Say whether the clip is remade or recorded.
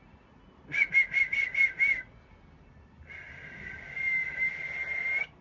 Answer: recorded